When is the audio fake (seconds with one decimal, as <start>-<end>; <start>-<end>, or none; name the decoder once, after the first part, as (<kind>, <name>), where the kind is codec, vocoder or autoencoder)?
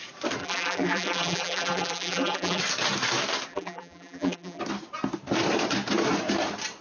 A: 0.4-2.6 (vocoder, BigVGAN v2); 3.5-4.6